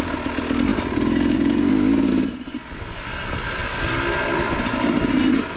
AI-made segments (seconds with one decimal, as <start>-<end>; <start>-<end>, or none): none